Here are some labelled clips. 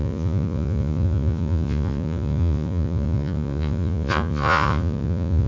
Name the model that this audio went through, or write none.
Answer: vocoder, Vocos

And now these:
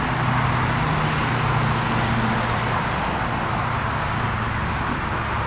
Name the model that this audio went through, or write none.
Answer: none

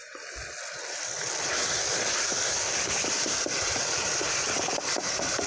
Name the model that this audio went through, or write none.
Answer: vocoder, BigVGAN v2